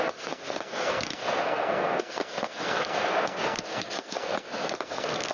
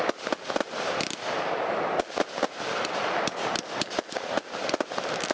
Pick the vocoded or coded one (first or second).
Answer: first